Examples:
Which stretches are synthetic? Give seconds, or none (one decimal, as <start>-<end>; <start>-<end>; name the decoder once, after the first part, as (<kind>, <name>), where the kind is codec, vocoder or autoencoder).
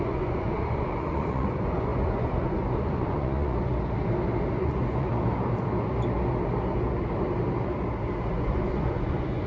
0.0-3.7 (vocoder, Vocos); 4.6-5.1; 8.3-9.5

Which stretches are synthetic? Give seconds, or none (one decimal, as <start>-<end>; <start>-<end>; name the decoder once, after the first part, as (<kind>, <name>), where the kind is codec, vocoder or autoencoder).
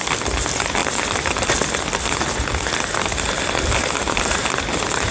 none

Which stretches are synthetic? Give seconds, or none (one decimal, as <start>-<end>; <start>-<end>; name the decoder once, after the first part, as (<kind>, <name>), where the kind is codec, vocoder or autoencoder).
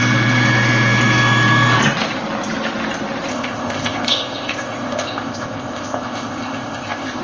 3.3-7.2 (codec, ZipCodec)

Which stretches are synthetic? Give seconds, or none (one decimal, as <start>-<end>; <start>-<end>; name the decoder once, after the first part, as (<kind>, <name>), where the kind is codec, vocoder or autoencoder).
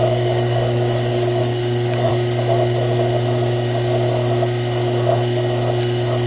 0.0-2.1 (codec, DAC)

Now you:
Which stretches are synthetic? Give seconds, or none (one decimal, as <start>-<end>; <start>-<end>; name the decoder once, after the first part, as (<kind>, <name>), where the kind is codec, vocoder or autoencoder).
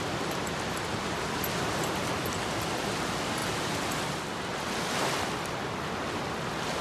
3.4-4.0 (vocoder, BigVGAN v2)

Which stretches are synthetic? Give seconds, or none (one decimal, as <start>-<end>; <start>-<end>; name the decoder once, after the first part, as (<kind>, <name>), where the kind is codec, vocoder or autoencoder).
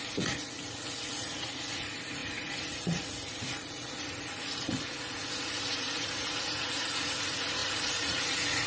0.0-8.7 (vocoder, Vocos)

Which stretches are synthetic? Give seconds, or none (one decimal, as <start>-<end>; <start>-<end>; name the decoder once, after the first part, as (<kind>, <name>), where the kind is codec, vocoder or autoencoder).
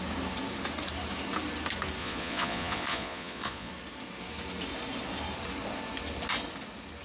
2.0-3.7 (vocoder, Vocos)